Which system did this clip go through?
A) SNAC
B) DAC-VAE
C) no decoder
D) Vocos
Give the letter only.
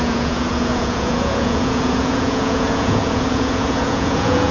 D